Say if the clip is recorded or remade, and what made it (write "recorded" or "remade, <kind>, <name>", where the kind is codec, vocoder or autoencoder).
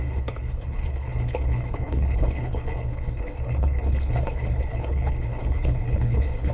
remade, codec, HILCodec